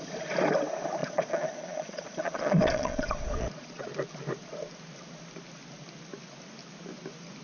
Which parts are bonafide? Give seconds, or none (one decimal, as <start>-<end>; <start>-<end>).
0.0-1.0; 4.0-7.4

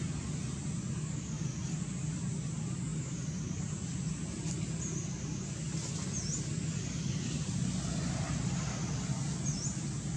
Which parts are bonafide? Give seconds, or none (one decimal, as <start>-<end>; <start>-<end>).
0.0-10.2

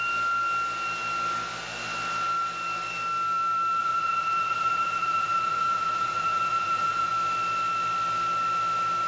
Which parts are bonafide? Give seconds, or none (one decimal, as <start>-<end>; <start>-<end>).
0.0-3.8; 7.1-9.1

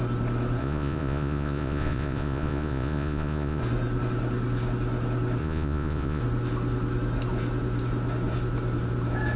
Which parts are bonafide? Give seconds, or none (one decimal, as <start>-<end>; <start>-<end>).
0.0-0.6; 3.6-5.4; 6.2-9.4

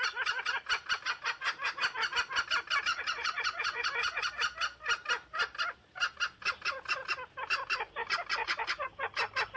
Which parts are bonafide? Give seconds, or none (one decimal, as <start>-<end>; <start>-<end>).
0.0-2.9; 4.3-9.6